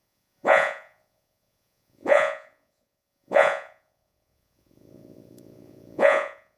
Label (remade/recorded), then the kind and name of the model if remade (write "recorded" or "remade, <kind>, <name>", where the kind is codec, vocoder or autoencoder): remade, vocoder, Vocos